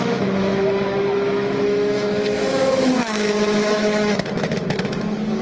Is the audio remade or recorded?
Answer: remade